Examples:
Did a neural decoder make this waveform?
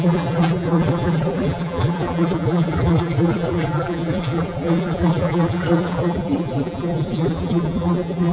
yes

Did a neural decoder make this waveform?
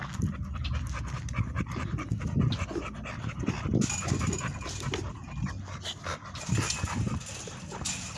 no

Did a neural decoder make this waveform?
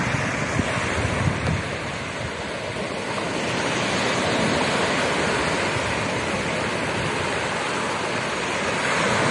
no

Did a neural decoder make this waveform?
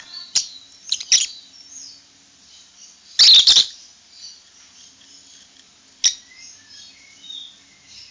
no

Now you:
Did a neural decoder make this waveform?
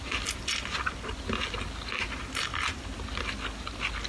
no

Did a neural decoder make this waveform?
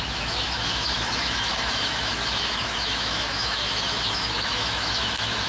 yes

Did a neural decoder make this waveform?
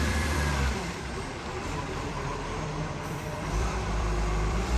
yes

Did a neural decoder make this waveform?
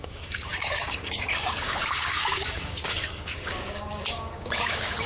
yes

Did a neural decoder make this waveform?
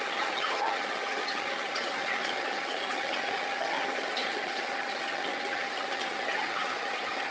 yes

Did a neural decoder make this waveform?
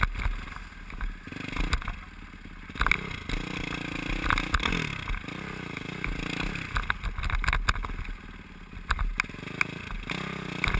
no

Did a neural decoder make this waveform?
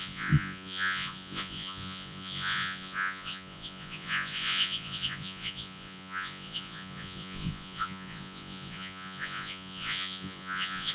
yes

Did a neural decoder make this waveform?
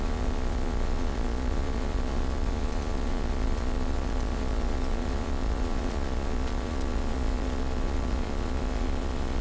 yes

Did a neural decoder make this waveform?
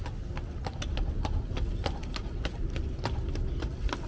no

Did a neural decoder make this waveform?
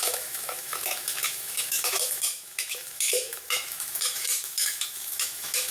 yes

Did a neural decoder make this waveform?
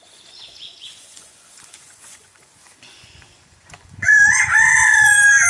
yes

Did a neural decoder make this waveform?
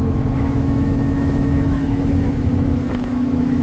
yes